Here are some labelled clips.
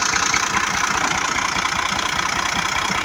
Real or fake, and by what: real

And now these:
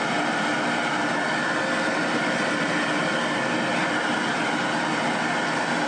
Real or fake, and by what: real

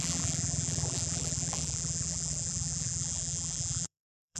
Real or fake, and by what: fake, vocoder, BigVGAN v2